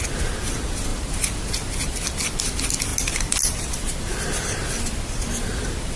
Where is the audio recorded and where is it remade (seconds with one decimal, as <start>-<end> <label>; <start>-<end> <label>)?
0.0-6.0 recorded